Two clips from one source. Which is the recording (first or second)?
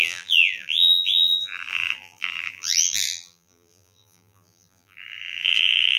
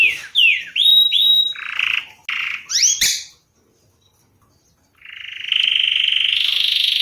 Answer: second